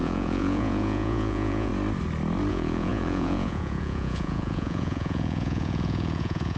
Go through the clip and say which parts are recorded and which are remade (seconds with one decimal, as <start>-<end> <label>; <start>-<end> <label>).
0.0-1.7 remade; 1.7-2.5 recorded; 2.5-6.6 remade